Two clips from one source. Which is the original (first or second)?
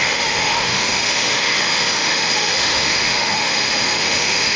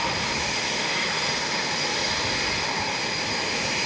second